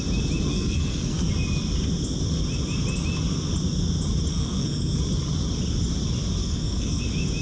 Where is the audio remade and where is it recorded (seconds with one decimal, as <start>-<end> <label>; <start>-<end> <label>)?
0.0-0.5 recorded; 0.5-1.3 remade; 1.3-4.3 recorded; 4.3-5.0 remade; 5.0-6.4 recorded; 6.4-7.0 remade; 7.0-7.4 recorded